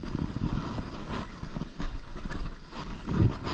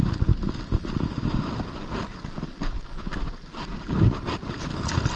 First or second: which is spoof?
first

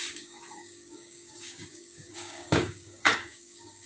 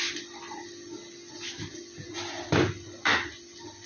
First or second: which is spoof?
first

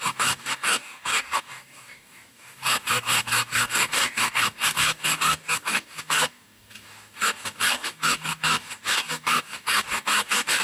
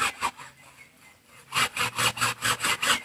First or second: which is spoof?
first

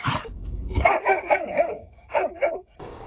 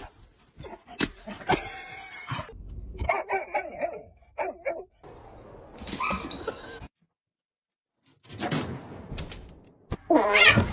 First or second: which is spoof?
first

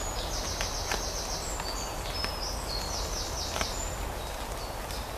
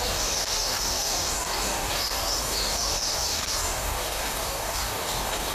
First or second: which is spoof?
second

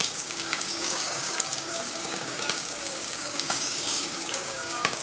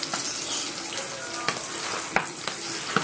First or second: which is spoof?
first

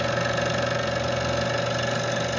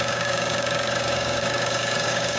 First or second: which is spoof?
second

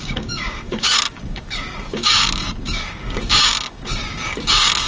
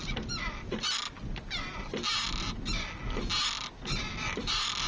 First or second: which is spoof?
first